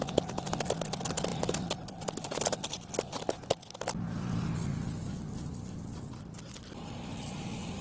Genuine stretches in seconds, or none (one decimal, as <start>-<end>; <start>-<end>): 0.0-7.8